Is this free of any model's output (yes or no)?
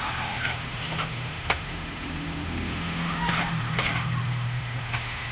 no